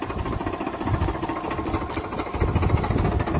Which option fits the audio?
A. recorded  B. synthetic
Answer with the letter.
A